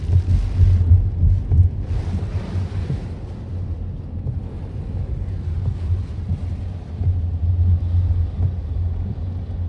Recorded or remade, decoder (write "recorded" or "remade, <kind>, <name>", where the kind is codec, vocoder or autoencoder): recorded